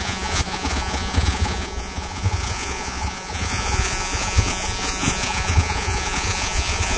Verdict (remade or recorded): remade